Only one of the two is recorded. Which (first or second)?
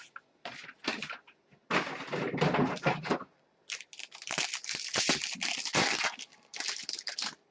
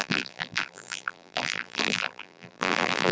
first